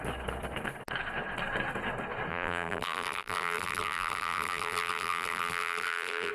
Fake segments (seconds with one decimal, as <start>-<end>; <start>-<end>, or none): 2.3-6.3